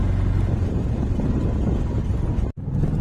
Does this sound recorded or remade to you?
recorded